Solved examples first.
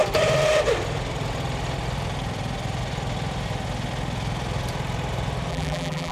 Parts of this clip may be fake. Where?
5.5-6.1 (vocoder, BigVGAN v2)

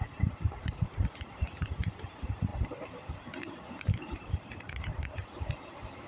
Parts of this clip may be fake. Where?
0.0-6.1 (vocoder, BigVGAN v2)

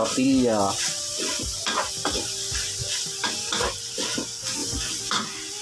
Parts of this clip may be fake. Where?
none

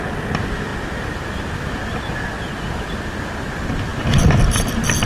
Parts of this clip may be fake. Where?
3.9-4.6 (vocoder, BigVGAN v2)

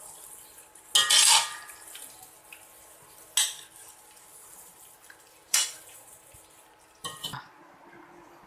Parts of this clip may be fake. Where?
4.3-7.2 (vocoder, BigVGAN v2)

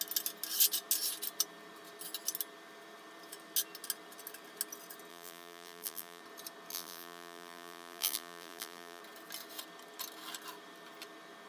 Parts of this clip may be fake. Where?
5.1-6.2 (vocoder, BigVGAN v2); 6.7-9.0